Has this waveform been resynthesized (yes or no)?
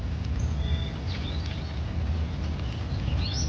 no